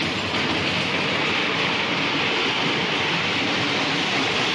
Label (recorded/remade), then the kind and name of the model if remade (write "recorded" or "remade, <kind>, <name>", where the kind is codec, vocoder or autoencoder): remade, vocoder, BigVGAN v2